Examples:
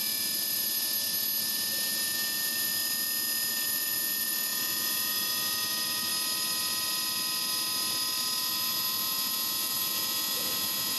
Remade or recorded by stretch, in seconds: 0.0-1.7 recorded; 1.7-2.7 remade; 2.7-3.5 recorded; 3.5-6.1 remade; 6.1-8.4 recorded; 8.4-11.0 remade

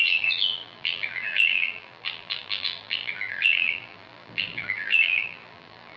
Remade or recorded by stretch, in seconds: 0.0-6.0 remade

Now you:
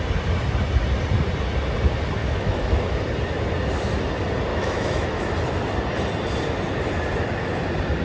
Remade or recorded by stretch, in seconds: 0.0-2.2 recorded; 2.2-2.8 remade; 2.8-4.5 recorded; 4.5-5.2 remade; 5.2-8.0 recorded

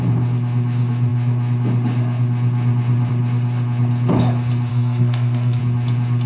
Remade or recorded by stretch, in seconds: 0.0-4.7 recorded; 4.7-5.6 remade; 5.6-6.3 recorded